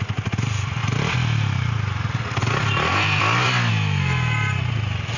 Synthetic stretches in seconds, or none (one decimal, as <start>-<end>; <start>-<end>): none